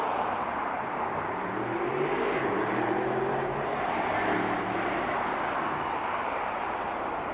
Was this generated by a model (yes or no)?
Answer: yes